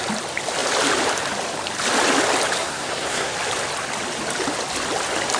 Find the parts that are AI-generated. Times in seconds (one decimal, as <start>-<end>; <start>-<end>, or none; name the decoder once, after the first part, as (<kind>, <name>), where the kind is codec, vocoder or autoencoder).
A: 2.6-3.3 (codec, SNAC)